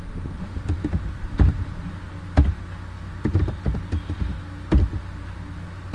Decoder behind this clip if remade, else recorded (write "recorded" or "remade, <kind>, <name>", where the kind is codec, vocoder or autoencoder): recorded